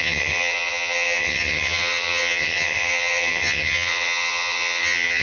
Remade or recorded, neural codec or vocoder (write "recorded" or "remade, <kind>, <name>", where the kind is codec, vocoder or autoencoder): remade, vocoder, HiFi-GAN